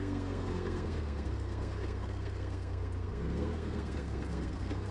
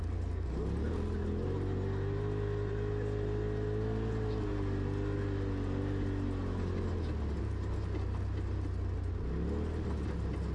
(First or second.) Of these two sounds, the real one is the second